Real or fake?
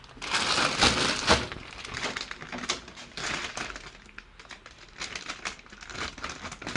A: real